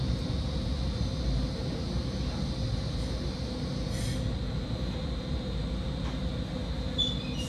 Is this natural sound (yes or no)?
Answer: yes